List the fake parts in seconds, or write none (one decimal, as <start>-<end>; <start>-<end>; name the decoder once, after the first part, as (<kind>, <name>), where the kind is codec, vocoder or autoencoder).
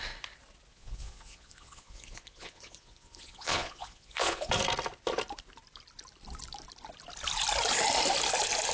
0.7-4.5 (vocoder, Vocos)